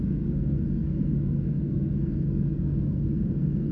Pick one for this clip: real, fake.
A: fake